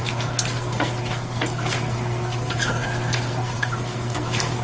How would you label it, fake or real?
fake